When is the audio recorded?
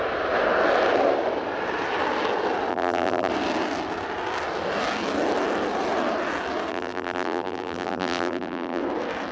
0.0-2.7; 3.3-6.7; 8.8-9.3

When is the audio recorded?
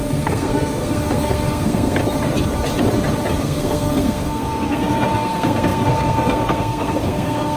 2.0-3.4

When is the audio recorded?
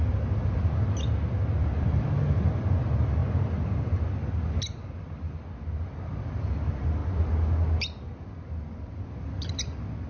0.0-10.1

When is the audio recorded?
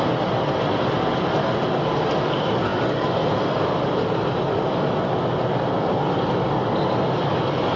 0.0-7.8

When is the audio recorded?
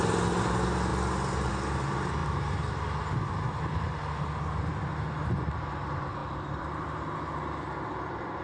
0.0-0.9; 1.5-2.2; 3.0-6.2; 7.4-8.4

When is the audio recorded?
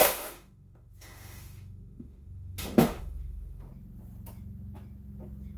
3.7-5.6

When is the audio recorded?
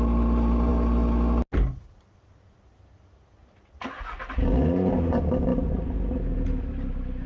0.0-7.3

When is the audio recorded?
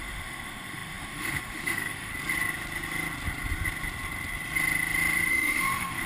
2.1-5.3